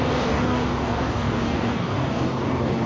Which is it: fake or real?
fake